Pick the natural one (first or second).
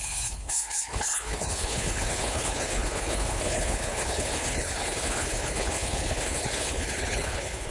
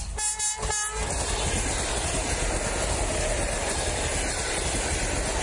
second